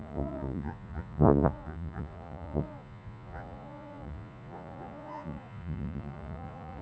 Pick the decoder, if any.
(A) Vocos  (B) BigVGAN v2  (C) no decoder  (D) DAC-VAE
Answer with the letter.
A